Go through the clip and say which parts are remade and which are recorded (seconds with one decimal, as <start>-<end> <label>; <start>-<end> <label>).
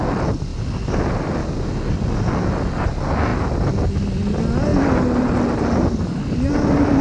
0.0-7.0 recorded